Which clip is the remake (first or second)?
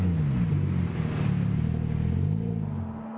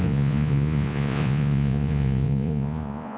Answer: second